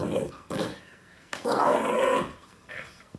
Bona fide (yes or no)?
no